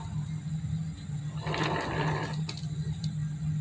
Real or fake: real